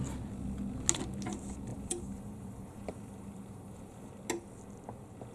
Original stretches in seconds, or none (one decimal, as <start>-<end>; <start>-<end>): 0.0-1.7; 4.1-5.3